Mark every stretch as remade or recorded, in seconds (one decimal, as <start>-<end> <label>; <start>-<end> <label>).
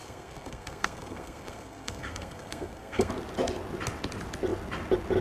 0.0-3.1 remade; 3.1-5.2 recorded